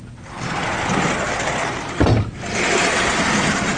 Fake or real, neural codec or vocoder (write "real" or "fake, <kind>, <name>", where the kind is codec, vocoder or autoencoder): real